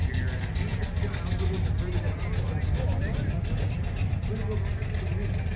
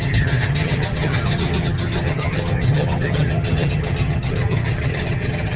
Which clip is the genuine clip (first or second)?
first